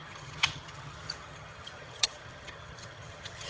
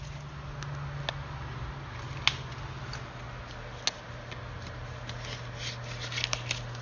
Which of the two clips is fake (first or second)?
first